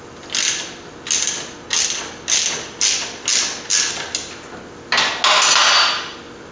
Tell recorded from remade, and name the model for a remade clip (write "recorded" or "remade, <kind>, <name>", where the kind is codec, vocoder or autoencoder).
recorded